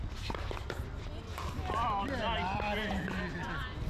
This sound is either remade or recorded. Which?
recorded